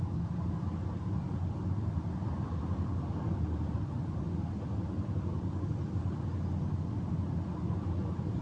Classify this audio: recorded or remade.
recorded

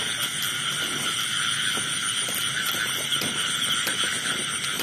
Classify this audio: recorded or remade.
recorded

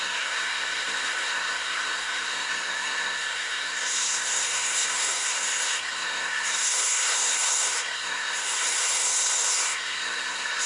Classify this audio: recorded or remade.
remade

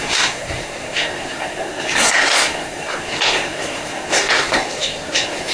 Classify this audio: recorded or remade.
remade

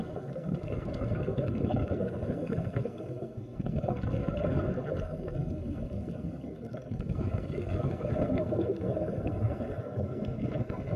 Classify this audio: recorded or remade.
remade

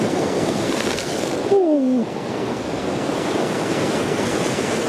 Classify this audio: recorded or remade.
remade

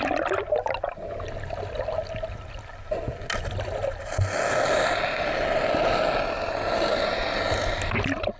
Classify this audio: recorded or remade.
recorded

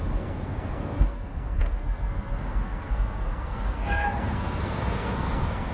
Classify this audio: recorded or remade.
remade